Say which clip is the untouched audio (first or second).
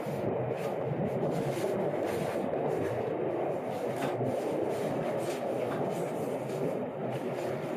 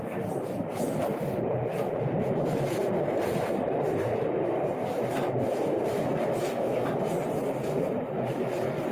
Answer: first